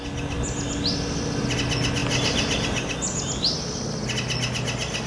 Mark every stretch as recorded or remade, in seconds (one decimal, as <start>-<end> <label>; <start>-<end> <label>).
0.0-5.1 recorded